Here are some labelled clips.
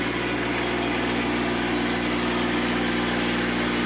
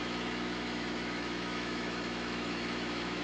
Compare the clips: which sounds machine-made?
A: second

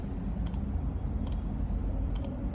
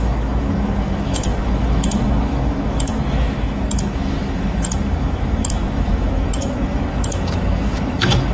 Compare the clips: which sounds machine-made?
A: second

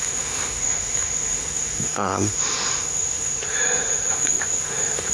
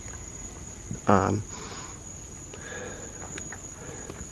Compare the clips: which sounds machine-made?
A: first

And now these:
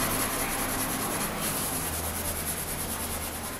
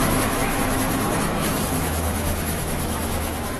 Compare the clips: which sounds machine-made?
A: second